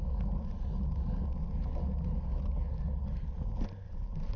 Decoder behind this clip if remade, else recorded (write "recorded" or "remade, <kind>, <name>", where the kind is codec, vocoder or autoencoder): recorded